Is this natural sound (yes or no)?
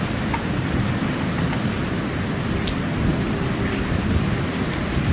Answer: yes